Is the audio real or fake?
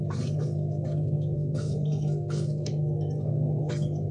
fake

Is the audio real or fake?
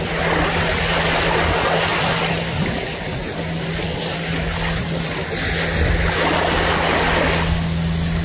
real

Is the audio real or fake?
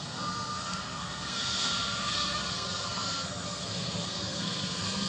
fake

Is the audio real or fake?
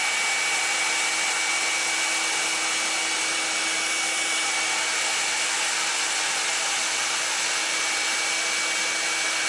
real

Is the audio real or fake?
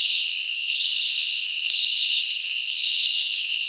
fake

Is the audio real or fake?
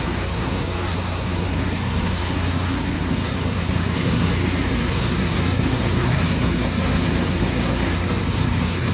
fake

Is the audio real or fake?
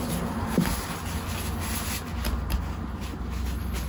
real